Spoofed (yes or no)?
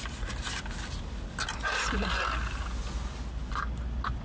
no